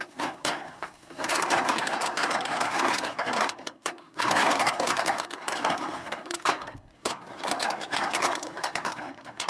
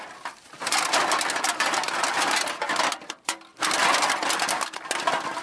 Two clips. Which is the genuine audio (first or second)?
second